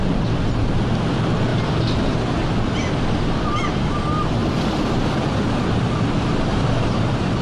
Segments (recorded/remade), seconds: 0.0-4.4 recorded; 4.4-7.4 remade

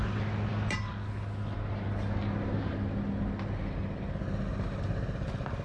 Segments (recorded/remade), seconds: 0.0-5.6 recorded

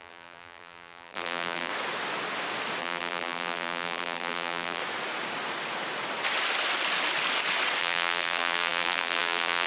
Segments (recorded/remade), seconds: 0.0-1.7 remade; 1.7-2.8 recorded; 2.8-4.8 remade; 4.8-7.8 recorded; 7.8-9.7 remade

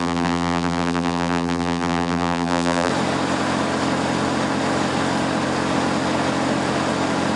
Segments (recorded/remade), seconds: 0.0-2.9 remade; 2.9-7.4 recorded

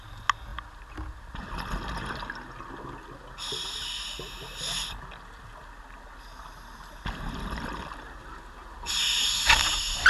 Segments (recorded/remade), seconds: 0.0-8.2 recorded; 8.2-8.9 remade; 8.9-10.1 recorded